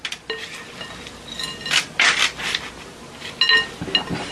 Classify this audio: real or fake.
real